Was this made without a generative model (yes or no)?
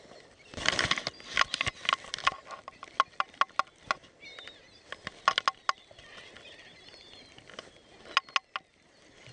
yes